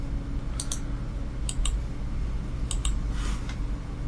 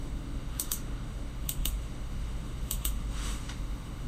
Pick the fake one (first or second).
second